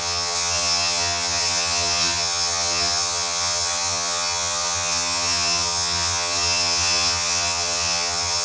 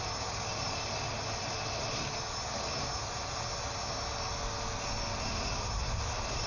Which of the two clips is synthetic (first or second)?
first